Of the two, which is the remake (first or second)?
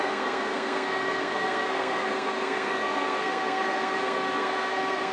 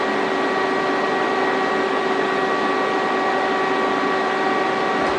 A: first